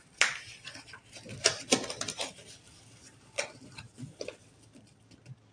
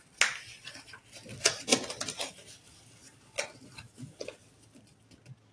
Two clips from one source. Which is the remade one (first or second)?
first